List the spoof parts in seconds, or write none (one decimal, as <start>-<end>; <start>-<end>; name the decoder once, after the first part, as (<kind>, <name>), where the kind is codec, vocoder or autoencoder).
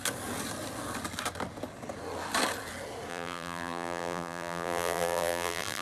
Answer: 3.1-5.8 (vocoder, BigVGAN v2)